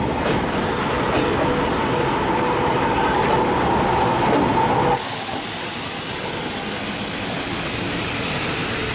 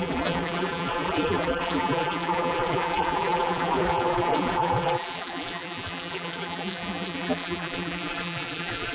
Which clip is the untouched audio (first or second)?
first